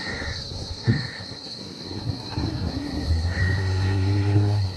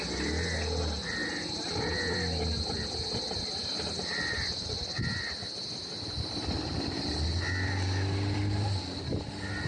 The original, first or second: second